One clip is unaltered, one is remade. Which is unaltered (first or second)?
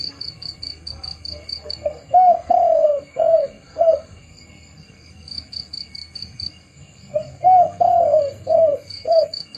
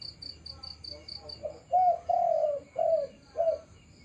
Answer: second